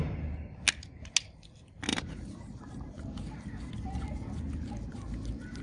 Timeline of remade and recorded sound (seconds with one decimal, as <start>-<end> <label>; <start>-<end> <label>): 0.0-1.9 recorded; 1.9-3.7 remade; 3.7-5.6 recorded